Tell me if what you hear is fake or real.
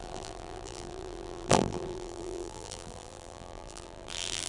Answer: fake